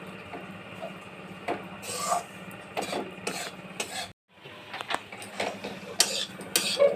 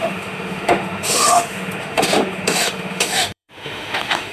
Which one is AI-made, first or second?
second